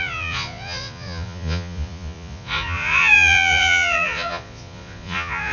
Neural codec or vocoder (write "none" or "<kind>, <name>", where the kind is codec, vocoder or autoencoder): vocoder, Vocos